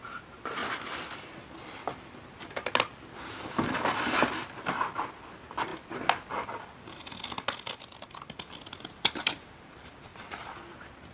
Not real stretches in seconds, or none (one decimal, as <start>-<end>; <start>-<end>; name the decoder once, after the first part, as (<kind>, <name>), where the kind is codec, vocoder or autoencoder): 0.0-0.6 (vocoder, BigVGAN v2); 4.6-5.7; 8.9-10.1